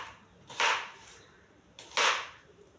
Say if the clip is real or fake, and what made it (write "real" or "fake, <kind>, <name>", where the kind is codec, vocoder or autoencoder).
fake, vocoder, BigVGAN v2